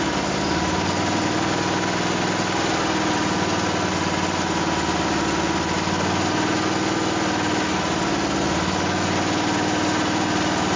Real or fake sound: real